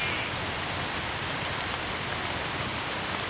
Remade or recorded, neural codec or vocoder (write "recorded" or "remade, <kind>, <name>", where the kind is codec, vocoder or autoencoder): recorded